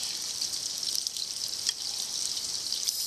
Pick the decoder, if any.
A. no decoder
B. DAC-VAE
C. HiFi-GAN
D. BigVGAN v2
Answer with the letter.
A